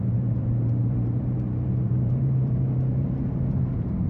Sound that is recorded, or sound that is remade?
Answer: remade